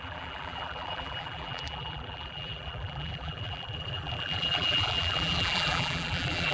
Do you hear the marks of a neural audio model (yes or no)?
yes